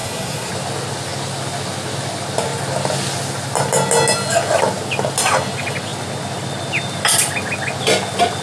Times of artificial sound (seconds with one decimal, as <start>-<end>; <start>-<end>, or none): 0.0-0.5